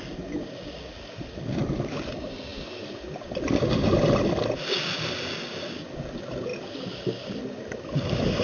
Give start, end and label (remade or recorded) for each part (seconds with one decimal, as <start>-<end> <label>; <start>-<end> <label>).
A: 0.0-6.5 recorded; 6.5-7.8 remade; 7.8-8.4 recorded